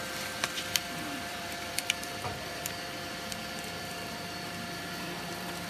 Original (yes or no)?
no